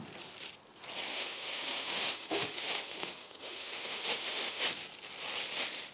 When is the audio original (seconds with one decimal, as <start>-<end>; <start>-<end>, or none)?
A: 0.0-1.1; 4.6-5.9